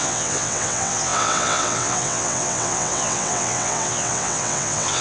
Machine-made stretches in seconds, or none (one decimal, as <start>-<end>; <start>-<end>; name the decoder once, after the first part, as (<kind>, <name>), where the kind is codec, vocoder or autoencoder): 0.0-5.0 (vocoder, WaveNeXt)